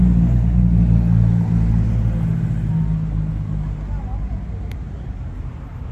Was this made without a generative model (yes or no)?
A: yes